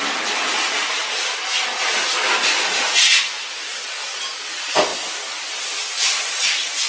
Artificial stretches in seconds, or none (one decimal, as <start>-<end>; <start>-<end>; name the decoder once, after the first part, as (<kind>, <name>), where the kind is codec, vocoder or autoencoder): 1.0-2.0 (vocoder, BigVGAN v2); 3.7-4.4